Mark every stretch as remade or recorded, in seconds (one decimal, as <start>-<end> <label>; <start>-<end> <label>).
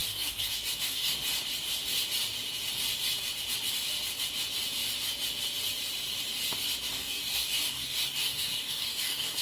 0.0-1.1 remade; 1.1-6.9 recorded; 6.9-9.4 remade